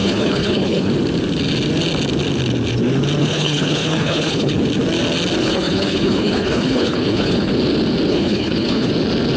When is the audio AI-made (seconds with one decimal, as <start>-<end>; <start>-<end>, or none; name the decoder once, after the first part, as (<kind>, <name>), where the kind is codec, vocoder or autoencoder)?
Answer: 0.0-0.9 (codec, HILCodec); 3.2-4.6; 5.4-7.5; 8.1-8.9